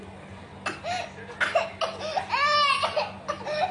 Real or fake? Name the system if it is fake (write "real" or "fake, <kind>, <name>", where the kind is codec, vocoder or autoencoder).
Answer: real